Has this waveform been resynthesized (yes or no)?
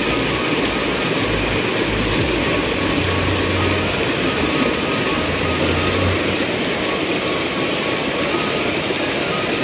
no